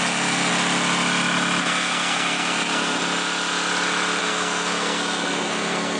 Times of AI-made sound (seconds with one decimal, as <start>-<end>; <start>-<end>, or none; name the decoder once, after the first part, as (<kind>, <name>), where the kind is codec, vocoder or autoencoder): 0.0-0.5 (codec, SNAC); 1.6-3.0; 4.2-6.0